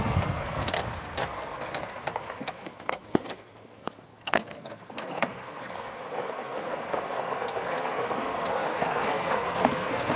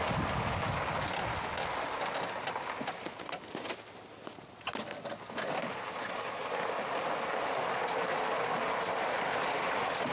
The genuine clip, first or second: second